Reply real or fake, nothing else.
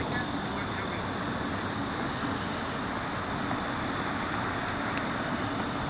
real